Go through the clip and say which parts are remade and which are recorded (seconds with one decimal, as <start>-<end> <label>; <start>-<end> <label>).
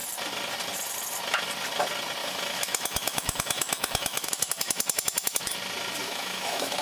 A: 0.0-2.2 recorded; 2.2-5.4 remade; 5.4-6.0 recorded; 6.0-6.8 remade